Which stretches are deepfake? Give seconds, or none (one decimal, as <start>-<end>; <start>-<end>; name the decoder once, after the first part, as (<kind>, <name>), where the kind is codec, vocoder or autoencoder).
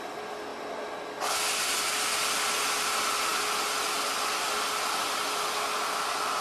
none